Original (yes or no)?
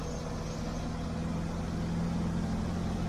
yes